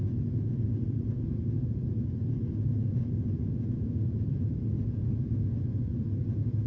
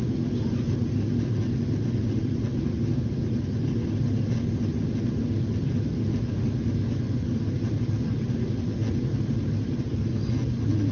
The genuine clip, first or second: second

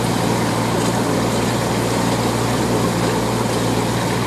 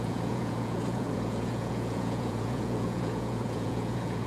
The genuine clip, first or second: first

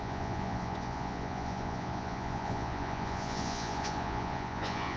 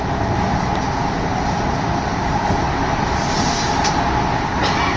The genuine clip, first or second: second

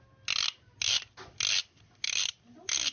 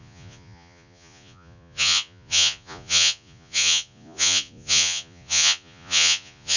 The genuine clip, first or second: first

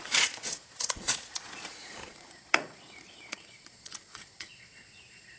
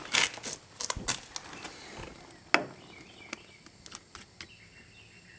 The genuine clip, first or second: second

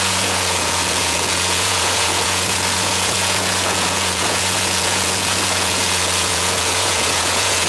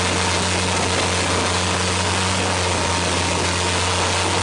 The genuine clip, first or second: second